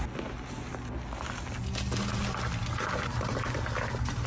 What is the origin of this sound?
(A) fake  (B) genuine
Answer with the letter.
B